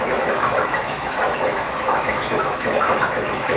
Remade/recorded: remade